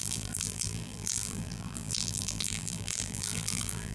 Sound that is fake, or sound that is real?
fake